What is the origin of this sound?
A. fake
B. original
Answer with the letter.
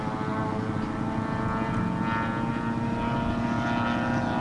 B